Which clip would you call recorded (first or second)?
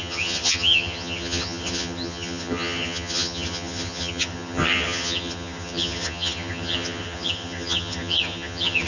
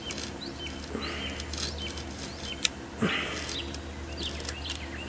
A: second